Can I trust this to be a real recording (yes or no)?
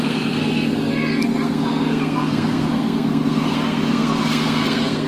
no